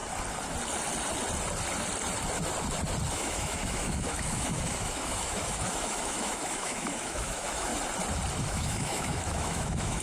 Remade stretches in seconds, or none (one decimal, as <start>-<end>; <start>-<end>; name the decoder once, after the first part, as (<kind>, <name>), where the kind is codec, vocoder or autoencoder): 3.1-7.7 (autoencoder, DAC-VAE); 8.4-10.0